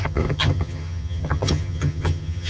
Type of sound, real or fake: fake